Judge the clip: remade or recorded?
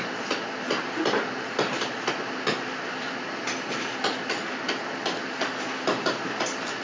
recorded